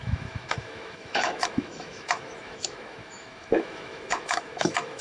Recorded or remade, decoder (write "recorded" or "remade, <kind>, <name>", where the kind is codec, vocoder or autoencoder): remade, autoencoder, DAC-VAE